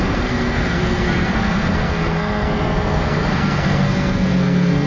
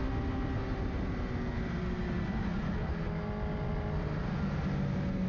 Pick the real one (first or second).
second